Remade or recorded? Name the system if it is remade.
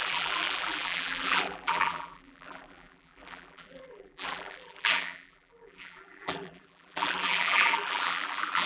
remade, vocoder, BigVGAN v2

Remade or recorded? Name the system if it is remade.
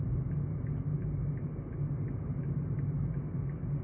recorded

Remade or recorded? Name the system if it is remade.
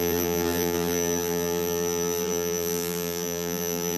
remade, vocoder, BigVGAN v2